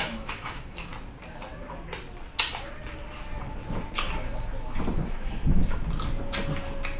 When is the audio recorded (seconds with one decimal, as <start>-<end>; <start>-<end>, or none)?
0.9-5.1; 5.6-7.0